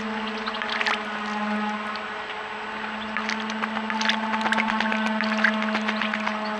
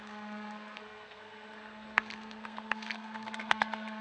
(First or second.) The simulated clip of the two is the second